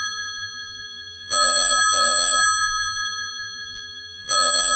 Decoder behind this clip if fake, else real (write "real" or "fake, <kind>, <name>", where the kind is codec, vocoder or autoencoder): fake, vocoder, BigVGAN v2